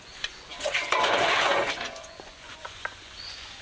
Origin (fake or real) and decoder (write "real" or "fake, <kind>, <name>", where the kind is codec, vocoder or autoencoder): fake, vocoder, Vocos